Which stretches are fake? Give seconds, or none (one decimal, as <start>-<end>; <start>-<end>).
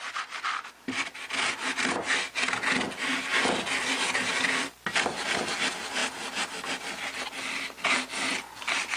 none